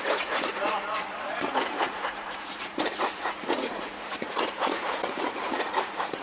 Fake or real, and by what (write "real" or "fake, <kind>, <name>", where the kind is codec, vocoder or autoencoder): fake, vocoder, Vocos